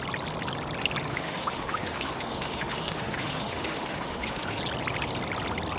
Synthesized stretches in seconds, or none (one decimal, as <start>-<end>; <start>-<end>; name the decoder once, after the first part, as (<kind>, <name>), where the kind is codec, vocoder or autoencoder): 1.1-4.6 (autoencoder, DAC-VAE)